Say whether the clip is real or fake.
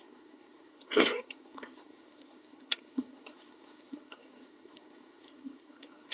fake